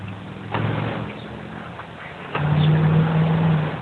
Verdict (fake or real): real